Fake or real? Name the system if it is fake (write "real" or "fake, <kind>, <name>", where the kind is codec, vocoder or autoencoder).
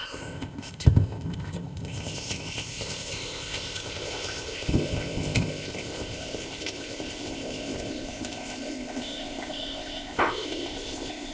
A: fake, codec, ZipCodec